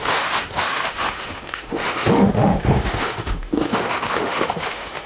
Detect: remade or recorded remade